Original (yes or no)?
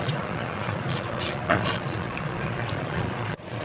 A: no